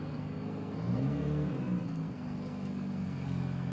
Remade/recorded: remade